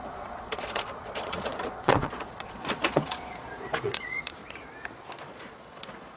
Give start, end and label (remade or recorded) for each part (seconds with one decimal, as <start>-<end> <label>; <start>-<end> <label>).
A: 0.0-4.4 remade; 4.4-5.2 recorded; 5.2-6.2 remade